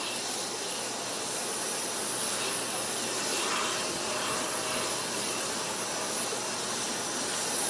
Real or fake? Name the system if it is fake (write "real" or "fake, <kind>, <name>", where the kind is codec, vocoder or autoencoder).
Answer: real